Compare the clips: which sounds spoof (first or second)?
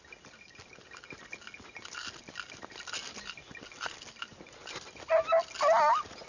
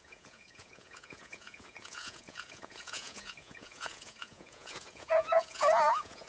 second